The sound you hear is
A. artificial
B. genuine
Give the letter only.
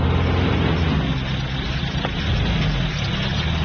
B